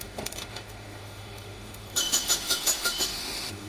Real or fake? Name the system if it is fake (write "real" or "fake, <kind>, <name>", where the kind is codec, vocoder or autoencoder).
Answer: fake, autoencoder, DAC-VAE